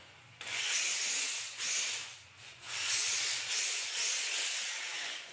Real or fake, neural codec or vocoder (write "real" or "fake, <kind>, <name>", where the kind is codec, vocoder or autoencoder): fake, vocoder, Vocos